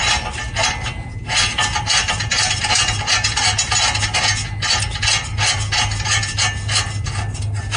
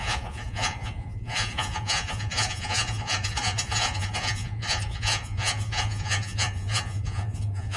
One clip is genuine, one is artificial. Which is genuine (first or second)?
first